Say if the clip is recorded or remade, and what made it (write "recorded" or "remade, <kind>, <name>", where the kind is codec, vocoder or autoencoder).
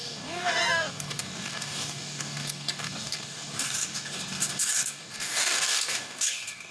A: remade, codec, DAC